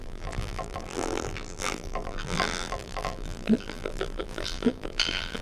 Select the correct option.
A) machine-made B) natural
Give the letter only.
A